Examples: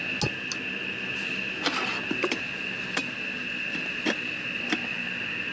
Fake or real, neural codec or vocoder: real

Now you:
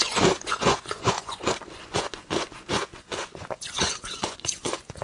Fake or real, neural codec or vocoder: fake, vocoder, Vocos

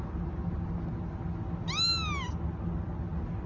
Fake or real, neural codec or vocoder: real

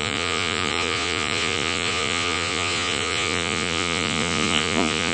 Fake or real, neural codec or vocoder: fake, vocoder, Vocos